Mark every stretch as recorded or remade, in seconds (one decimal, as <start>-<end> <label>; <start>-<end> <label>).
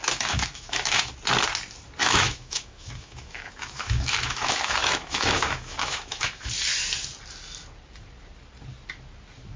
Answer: 0.0-1.1 remade; 1.1-2.0 recorded; 2.0-6.5 remade; 6.5-9.6 recorded